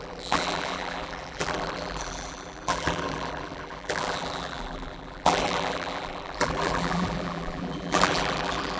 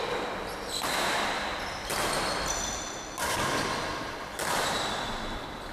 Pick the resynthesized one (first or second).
first